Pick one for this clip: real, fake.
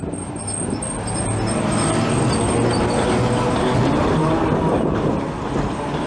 real